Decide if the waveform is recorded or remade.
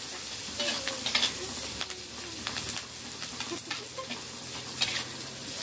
recorded